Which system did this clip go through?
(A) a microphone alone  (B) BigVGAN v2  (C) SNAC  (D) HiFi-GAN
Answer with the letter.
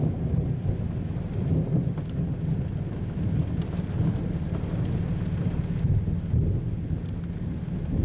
A